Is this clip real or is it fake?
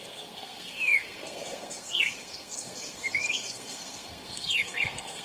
fake